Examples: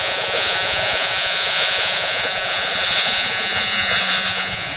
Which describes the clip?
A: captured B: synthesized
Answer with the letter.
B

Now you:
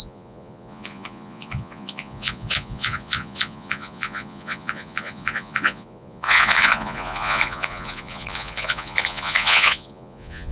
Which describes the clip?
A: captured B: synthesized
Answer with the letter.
B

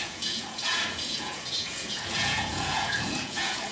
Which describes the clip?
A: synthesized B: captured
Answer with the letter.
A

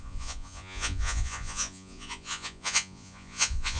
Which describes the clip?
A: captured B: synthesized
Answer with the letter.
B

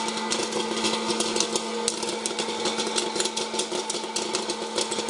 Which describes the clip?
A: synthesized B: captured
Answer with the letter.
B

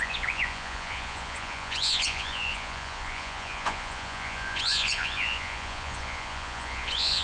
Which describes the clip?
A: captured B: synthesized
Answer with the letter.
B